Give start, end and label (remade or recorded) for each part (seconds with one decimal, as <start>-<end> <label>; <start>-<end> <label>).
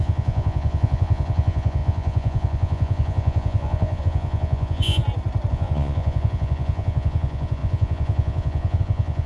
0.0-5.0 remade; 5.0-5.5 recorded; 5.5-9.3 remade